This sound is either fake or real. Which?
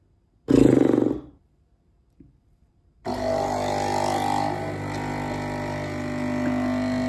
real